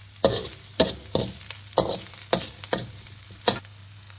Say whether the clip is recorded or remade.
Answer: recorded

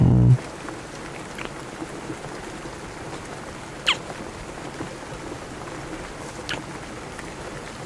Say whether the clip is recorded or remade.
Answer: recorded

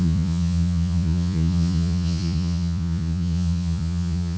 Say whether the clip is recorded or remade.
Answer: remade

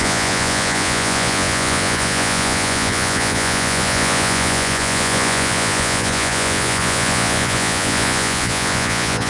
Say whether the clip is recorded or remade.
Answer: remade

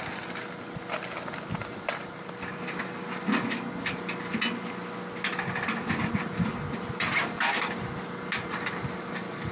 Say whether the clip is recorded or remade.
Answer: recorded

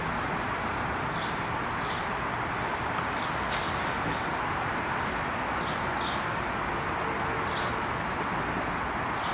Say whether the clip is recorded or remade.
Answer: recorded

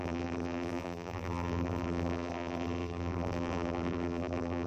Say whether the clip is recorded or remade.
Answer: remade